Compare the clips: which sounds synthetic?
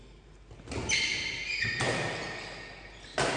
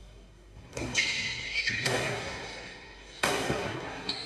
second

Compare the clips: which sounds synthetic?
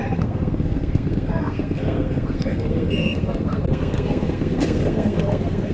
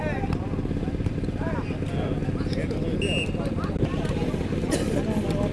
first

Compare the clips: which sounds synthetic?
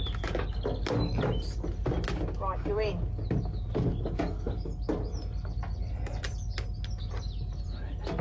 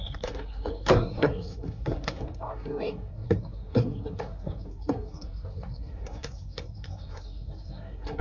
second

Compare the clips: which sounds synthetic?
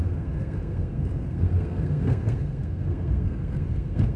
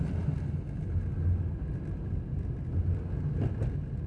first